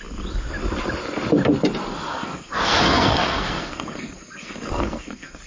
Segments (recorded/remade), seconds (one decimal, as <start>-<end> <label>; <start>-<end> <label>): 0.0-2.1 recorded; 2.1-5.5 remade